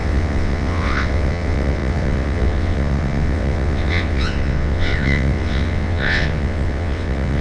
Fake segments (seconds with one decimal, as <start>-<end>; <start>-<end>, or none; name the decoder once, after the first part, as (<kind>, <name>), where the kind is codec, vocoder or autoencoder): 0.0-7.4 (vocoder, WaveNeXt)